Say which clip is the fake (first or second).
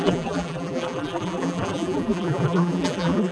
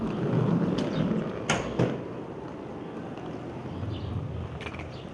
first